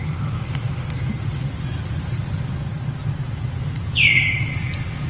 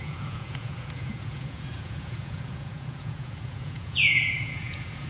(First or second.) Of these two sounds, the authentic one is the first